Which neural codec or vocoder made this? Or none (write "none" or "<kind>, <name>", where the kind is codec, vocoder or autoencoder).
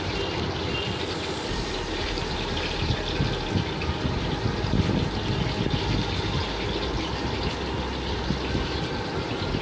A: none